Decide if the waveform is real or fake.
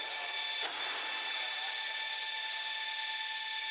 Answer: real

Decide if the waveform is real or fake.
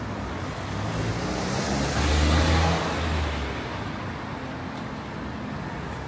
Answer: real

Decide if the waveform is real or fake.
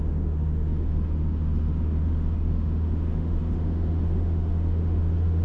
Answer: fake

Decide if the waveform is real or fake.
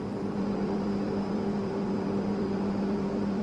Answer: fake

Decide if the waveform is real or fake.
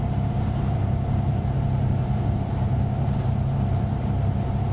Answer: fake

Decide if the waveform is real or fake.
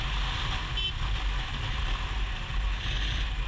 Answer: real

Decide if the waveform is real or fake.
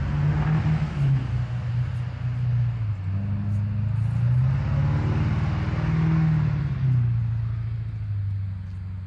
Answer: real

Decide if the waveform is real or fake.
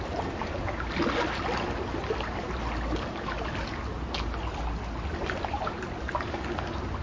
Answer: real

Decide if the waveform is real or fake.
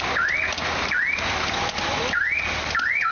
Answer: real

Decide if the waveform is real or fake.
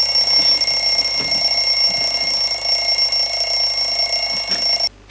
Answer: real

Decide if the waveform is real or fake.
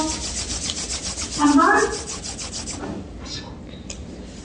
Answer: real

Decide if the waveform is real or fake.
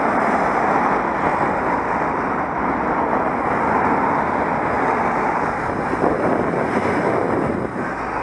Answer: real